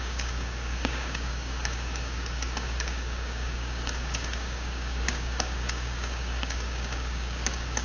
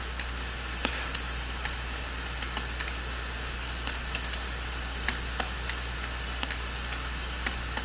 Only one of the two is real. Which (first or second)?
second